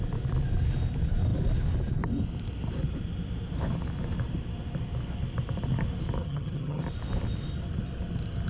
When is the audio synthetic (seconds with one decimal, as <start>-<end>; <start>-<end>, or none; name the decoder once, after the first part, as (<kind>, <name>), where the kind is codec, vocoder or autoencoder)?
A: 6.2-6.8 (vocoder, HiFi-GAN)